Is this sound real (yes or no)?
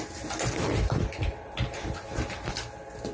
yes